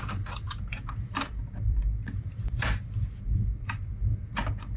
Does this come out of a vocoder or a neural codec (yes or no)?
yes